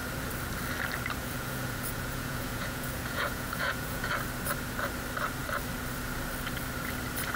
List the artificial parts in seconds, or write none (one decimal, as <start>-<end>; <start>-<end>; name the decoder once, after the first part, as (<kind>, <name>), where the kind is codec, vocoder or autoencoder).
1.2-4.1 (vocoder, Vocos)